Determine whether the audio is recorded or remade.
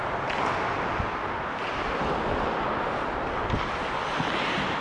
recorded